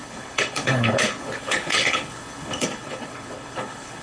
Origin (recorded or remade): remade